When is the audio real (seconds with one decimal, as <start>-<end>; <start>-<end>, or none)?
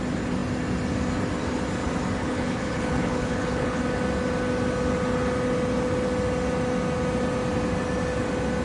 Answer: 0.0-2.2; 3.8-8.6